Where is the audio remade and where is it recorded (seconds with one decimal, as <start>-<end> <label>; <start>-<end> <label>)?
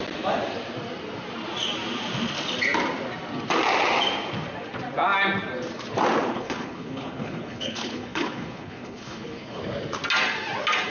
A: 0.0-6.3 recorded; 6.3-9.6 remade; 9.6-10.9 recorded